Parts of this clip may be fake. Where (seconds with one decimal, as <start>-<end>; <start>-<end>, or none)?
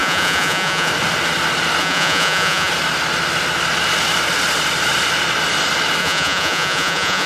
0.0-0.9; 1.8-2.7; 6.0-7.3